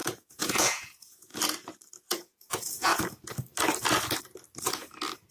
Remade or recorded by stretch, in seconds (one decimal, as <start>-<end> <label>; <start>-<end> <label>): 0.0-1.3 remade; 1.3-2.1 recorded; 2.1-2.9 remade; 2.9-5.3 recorded